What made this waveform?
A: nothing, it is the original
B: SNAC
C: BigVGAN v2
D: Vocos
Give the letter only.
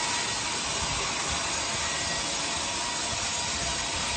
A